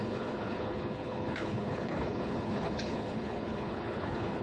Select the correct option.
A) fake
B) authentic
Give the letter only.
A